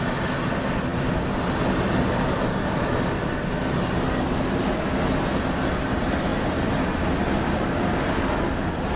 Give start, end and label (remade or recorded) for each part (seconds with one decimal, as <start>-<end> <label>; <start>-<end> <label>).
0.0-9.0 recorded